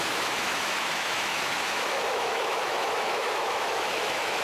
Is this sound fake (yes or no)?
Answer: yes